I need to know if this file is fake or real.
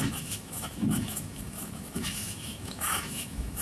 fake